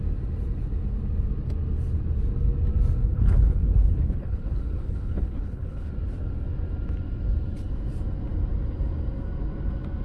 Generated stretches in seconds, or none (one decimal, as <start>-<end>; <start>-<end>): 3.0-5.9